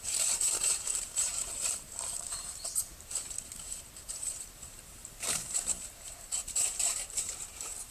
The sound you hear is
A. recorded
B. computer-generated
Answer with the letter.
B